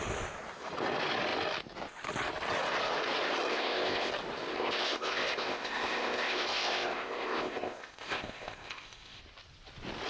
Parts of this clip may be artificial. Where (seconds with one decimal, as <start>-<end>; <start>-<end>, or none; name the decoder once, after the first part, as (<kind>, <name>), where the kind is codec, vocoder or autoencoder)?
3.5-4.1 (codec, ZipCodec); 4.5-9.2